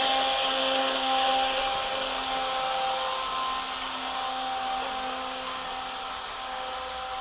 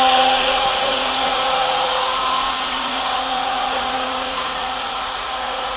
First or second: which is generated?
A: second